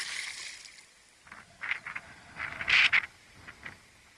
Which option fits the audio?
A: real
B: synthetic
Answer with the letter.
A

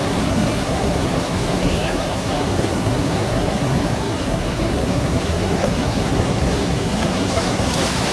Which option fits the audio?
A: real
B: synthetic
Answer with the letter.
B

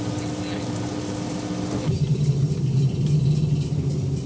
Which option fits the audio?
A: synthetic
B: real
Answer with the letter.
B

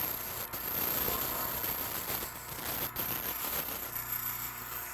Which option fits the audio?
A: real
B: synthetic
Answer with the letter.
A